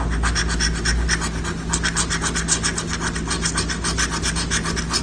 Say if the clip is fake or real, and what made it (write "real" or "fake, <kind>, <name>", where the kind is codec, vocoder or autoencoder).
real